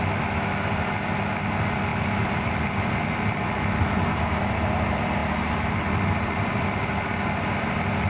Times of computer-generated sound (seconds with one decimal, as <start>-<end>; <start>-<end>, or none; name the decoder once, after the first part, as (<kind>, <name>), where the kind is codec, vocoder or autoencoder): none